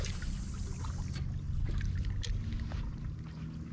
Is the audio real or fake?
real